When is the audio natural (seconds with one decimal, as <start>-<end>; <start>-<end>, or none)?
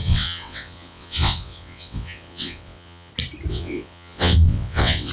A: 3.1-3.5